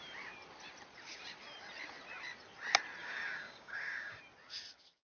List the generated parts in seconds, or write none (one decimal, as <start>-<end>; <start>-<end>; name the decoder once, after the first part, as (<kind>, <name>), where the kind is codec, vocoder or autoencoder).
3.0-4.2 (codec, DAC)